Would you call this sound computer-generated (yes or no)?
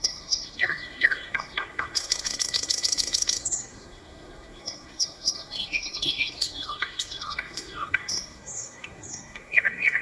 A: yes